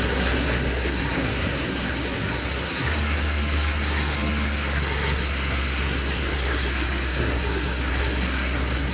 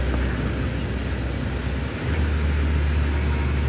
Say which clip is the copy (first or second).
first